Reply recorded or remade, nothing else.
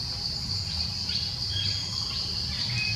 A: recorded